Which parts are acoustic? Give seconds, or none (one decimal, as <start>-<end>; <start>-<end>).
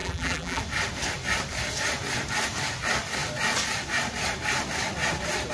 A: 0.6-5.5